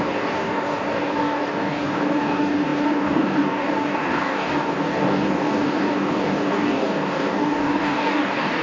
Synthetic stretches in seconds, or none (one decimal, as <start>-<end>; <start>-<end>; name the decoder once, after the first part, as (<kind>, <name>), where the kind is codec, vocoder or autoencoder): 0.0-8.6 (codec, DAC)